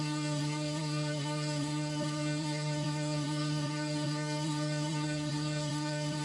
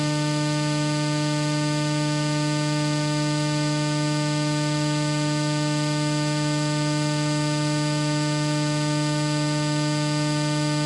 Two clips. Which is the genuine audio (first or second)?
second